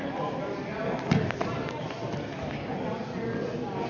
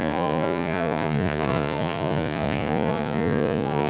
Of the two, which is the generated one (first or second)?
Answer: second